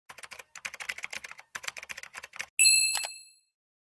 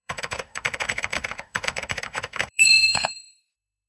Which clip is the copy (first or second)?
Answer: second